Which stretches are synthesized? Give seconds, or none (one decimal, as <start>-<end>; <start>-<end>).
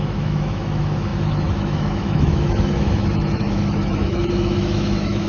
0.0-5.3